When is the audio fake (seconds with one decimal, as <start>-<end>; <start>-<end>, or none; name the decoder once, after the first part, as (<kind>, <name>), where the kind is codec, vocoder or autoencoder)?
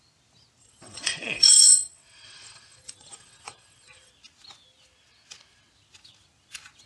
0.6-4.1 (vocoder, WaveNeXt)